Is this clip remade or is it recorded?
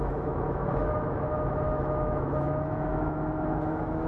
remade